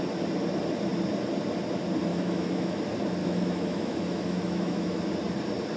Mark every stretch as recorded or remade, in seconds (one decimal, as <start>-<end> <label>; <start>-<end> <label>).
0.0-2.1 recorded; 2.1-2.8 remade; 2.8-3.2 recorded; 3.2-5.0 remade; 5.0-5.8 recorded